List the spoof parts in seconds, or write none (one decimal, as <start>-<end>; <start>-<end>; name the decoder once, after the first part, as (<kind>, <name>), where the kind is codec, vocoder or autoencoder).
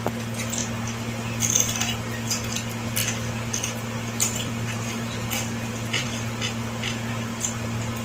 0.0-0.6 (vocoder, BigVGAN v2); 2.3-8.0